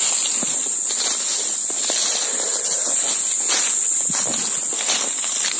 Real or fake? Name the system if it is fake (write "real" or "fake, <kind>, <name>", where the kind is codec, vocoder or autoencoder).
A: real